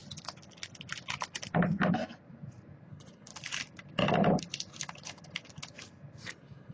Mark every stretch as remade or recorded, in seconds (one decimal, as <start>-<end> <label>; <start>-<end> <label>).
0.0-2.9 recorded; 2.9-3.3 remade; 3.3-6.2 recorded; 6.2-6.7 remade